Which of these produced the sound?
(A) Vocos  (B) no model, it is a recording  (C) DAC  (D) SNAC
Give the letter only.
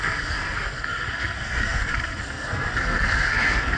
D